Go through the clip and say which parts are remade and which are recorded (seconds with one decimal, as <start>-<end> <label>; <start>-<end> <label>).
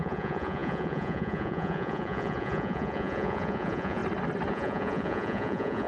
0.0-4.0 remade; 4.0-4.5 recorded; 4.5-5.9 remade